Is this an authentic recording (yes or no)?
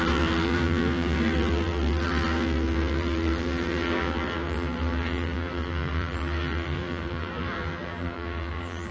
no